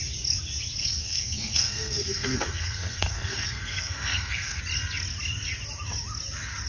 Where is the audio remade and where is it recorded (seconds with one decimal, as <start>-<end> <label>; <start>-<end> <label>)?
0.0-0.8 recorded; 0.8-4.6 remade; 4.6-6.7 recorded